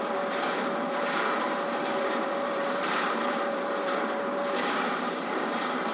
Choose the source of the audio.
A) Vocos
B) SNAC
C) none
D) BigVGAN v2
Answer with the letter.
D